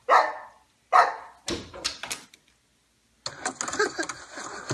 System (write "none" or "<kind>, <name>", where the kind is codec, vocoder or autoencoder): none